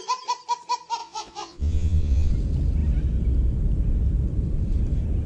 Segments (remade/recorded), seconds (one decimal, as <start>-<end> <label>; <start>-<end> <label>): 0.0-1.0 recorded; 1.0-2.3 remade; 2.3-5.3 recorded